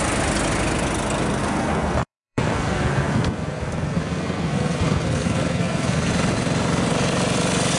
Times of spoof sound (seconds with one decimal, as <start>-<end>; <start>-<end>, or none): 1.4-6.1